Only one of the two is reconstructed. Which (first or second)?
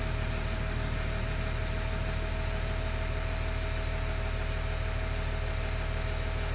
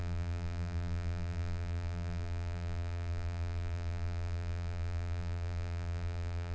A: second